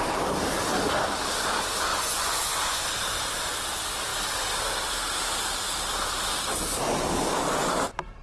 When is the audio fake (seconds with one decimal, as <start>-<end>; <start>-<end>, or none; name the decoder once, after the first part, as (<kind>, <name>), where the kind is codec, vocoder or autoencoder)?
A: 1.9-2.8 (vocoder, Vocos)